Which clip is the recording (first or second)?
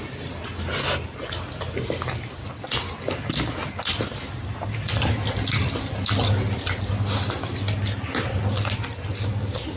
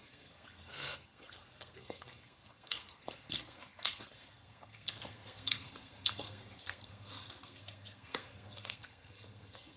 first